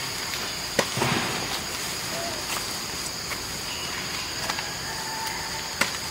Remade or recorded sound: recorded